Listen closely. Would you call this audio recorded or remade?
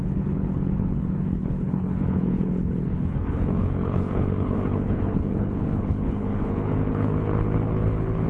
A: remade